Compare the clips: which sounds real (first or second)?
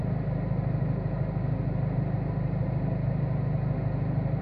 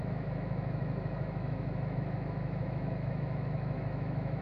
first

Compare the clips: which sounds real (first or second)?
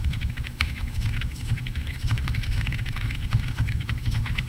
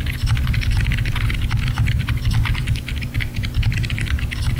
second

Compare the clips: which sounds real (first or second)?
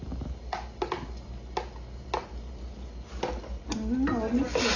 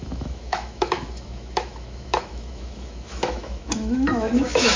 first